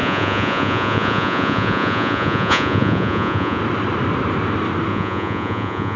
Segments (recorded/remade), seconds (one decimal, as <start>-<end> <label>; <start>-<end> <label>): 0.0-3.6 remade; 3.6-4.9 recorded; 4.9-6.0 remade